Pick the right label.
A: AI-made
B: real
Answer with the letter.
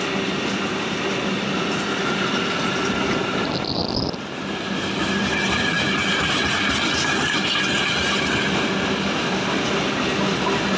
B